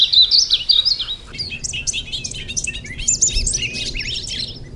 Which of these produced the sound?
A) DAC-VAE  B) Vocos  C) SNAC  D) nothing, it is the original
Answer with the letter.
D